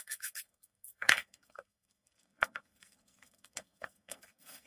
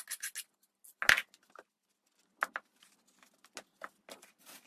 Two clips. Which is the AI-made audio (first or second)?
first